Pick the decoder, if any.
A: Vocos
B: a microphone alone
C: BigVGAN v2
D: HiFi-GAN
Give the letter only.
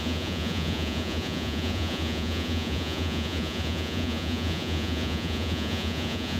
A